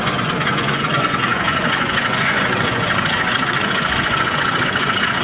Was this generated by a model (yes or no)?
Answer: yes